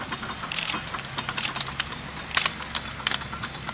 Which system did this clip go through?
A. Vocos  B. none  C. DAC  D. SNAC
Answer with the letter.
B